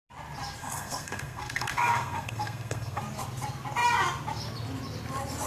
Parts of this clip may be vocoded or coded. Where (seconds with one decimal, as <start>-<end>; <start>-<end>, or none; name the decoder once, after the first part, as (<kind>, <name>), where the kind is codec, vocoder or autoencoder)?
0.6-3.0 (codec, SNAC)